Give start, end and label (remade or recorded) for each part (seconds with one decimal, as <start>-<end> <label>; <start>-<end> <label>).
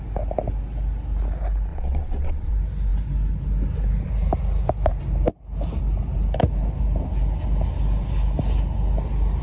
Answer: 0.0-1.7 recorded; 1.7-2.5 remade; 2.5-9.4 recorded